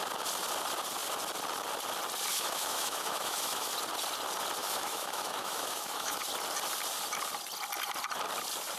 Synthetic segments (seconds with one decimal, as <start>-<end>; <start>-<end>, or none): 2.3-3.7; 4.6-6.2